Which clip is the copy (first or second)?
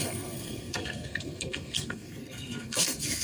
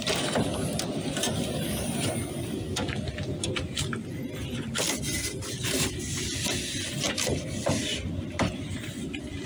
first